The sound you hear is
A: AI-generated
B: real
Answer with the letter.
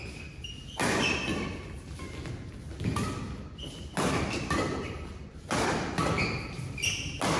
B